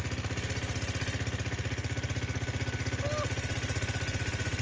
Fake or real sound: real